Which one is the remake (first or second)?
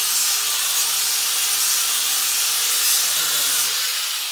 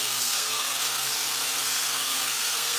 second